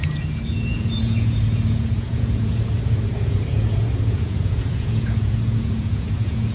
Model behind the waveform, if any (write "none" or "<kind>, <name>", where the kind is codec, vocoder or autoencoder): vocoder, Vocos